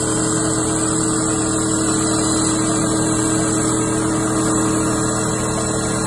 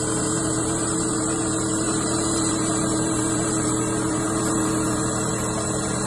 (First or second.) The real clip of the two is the first